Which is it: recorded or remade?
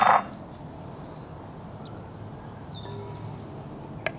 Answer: recorded